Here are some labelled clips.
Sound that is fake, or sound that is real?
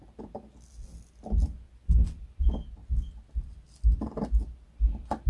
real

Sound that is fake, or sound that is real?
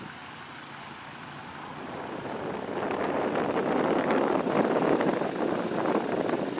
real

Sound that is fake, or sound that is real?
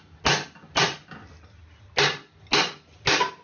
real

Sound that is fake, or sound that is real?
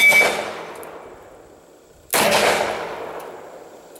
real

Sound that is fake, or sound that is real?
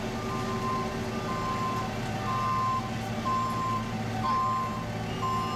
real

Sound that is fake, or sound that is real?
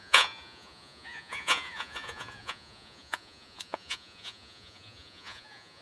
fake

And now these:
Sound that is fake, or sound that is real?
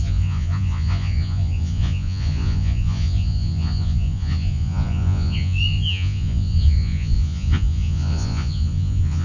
fake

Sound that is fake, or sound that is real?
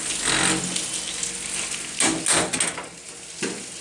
real